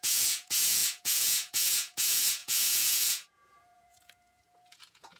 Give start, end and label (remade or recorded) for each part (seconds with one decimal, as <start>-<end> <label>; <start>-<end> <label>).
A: 0.0-5.2 remade

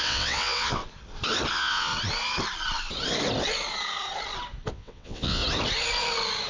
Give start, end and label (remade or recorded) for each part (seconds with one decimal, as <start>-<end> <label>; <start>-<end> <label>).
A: 0.0-0.8 remade; 0.8-1.5 recorded; 1.5-1.9 remade; 1.9-4.7 recorded; 4.7-5.4 remade; 5.4-6.5 recorded

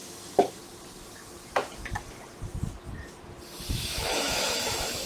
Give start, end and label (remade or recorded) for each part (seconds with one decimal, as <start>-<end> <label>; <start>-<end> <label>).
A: 0.0-0.6 remade; 0.6-3.7 recorded; 3.7-5.1 remade

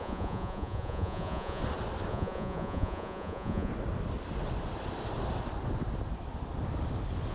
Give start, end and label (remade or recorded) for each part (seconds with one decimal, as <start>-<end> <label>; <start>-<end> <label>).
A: 0.0-1.6 remade; 1.6-2.1 recorded; 2.1-3.7 remade; 3.7-7.3 recorded